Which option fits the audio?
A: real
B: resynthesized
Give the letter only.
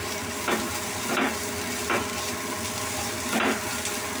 A